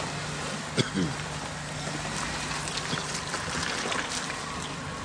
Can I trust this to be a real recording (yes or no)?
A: yes